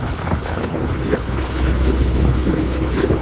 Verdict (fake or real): fake